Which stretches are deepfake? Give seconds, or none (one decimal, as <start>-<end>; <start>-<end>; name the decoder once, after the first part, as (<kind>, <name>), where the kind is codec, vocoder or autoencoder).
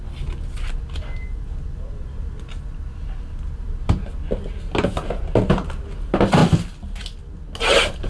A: none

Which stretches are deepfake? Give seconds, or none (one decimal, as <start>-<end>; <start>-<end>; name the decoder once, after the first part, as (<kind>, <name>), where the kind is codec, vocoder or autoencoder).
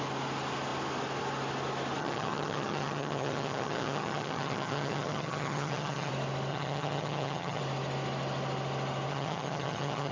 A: 2.0-6.1 (vocoder, HiFi-GAN); 6.5-7.6; 9.1-10.1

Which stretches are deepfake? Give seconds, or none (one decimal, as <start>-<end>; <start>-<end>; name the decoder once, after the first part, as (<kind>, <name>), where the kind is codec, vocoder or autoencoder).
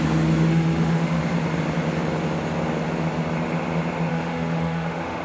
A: 0.5-1.2 (autoencoder, DAC-VAE); 4.1-5.2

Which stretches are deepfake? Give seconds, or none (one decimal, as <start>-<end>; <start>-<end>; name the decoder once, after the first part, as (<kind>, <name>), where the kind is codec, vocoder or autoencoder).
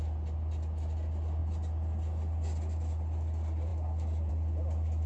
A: none